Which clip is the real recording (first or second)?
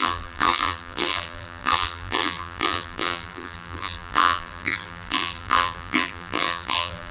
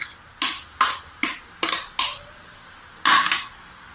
second